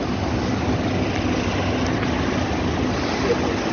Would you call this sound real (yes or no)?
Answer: yes